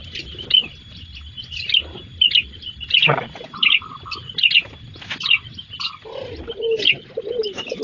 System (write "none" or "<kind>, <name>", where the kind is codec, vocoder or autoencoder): none